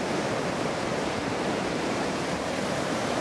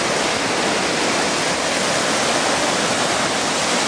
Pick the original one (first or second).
second